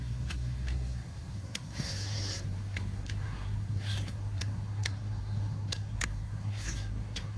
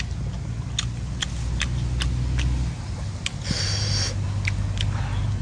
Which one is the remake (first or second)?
first